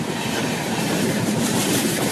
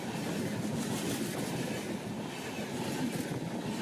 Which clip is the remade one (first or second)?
first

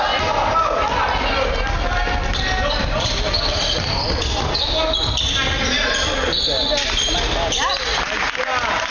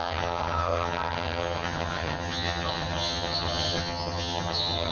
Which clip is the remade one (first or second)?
second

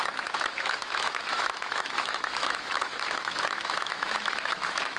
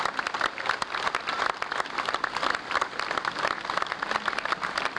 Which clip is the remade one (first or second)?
first